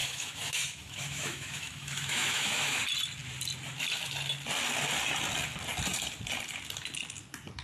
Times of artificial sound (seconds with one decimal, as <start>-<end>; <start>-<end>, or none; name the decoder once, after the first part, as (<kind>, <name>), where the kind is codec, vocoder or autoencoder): 0.0-2.8 (autoencoder, DAC-VAE)